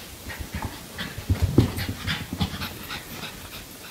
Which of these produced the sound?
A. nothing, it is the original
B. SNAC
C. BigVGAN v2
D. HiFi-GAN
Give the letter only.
A